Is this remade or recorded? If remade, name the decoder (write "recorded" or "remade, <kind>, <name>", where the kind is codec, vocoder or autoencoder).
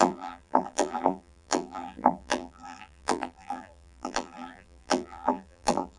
remade, vocoder, BigVGAN v2